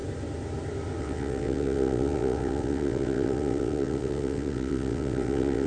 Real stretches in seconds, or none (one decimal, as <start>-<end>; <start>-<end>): 0.0-1.0